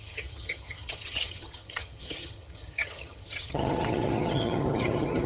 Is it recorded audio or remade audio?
remade